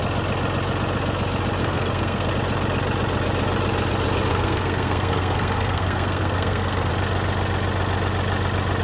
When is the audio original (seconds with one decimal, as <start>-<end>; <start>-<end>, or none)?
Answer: 0.0-1.6; 2.3-4.3; 6.9-8.8